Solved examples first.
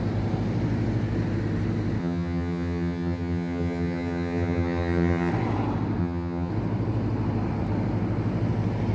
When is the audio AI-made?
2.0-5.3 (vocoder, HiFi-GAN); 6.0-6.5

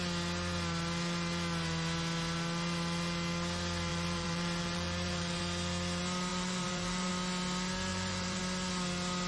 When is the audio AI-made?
3.9-5.4 (vocoder, BigVGAN v2); 6.3-7.1; 7.9-8.4

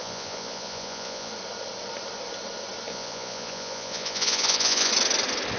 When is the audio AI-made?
0.0-1.3 (vocoder, Vocos); 2.9-4.9

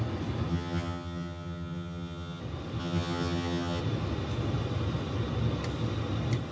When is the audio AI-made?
0.5-2.4 (vocoder, HiFi-GAN); 2.8-3.8

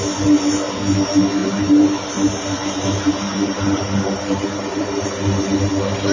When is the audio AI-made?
1.4-5.1 (vocoder, BigVGAN v2)

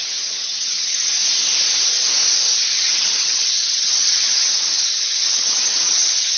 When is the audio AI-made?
0.0-1.2 (vocoder, HiFi-GAN); 2.6-6.4

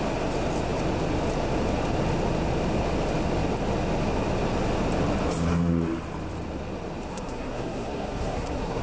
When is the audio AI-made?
7.1-8.8 (codec, SNAC)

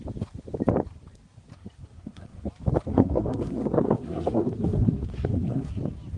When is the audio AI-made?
1.5-2.5 (codec, SNAC); 2.9-5.8